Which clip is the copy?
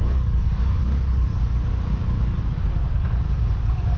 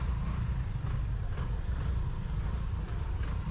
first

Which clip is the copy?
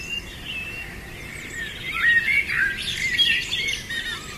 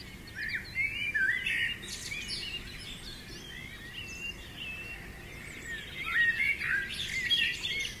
first